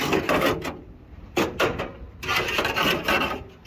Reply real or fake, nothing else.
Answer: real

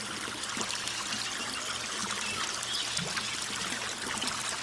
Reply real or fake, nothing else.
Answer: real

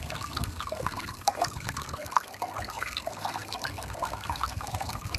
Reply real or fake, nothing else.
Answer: fake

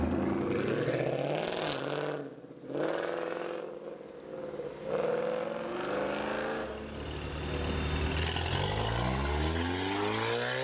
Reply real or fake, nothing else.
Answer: real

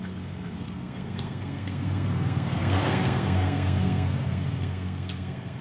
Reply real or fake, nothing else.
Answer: fake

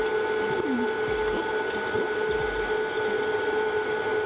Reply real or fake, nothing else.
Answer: real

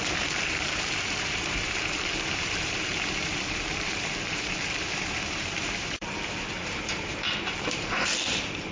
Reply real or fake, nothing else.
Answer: fake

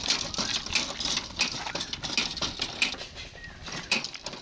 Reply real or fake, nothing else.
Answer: real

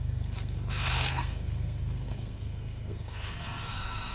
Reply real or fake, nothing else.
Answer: fake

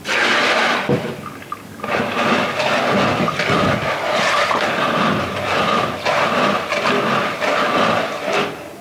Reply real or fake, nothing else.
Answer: real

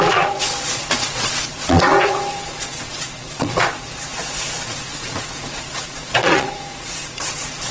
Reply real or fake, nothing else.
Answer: fake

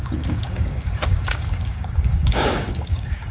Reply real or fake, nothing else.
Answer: fake